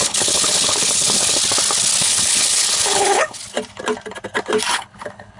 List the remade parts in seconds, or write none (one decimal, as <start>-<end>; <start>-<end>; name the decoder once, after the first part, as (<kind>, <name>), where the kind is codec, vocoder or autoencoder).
0.0-1.4 (codec, HILCodec); 2.0-3.4; 4.7-5.4